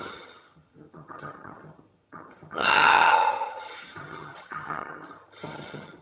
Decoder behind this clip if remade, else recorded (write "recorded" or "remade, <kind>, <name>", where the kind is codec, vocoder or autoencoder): remade, vocoder, HiFi-GAN